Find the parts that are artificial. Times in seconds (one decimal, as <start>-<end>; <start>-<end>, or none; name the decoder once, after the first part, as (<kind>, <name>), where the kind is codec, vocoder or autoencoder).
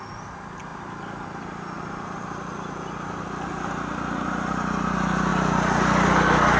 none